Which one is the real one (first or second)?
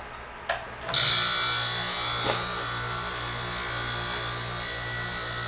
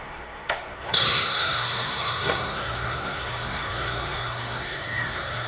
first